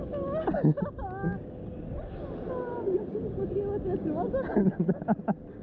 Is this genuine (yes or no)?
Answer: yes